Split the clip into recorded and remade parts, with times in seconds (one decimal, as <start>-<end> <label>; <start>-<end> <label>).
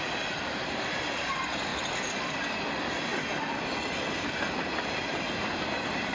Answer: 0.0-6.1 recorded